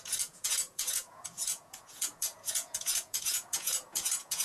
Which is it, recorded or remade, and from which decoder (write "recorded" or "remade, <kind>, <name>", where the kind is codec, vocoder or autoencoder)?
remade, vocoder, Vocos